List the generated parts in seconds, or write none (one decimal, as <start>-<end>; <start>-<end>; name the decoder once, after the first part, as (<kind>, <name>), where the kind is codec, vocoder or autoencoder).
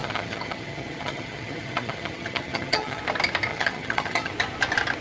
0.0-3.0 (vocoder, HiFi-GAN); 3.5-4.3